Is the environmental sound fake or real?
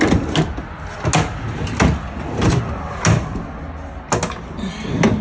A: real